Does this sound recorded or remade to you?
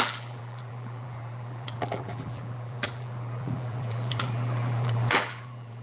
remade